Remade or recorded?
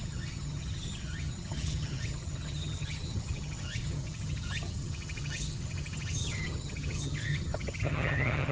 remade